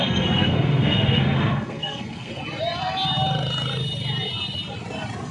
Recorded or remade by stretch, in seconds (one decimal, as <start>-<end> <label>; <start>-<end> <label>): 0.0-2.4 remade; 2.4-5.3 recorded